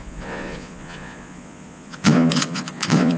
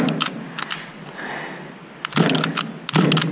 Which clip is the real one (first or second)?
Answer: second